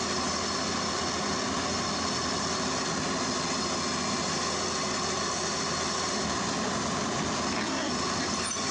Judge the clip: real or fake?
real